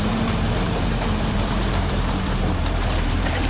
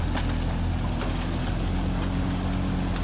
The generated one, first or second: first